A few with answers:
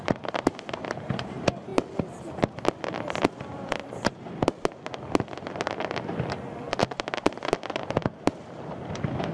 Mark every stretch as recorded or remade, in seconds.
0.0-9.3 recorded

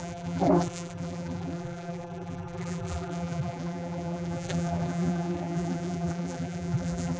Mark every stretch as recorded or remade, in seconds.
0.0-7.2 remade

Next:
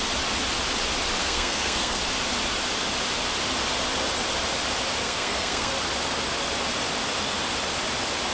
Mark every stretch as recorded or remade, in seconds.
0.0-1.2 recorded; 1.2-2.0 remade; 2.0-5.0 recorded; 5.0-5.7 remade; 5.7-8.3 recorded